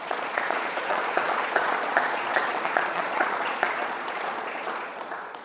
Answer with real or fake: fake